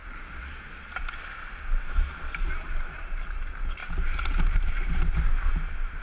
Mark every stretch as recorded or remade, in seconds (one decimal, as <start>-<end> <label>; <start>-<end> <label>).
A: 0.0-1.0 remade; 1.0-3.8 recorded; 3.8-6.0 remade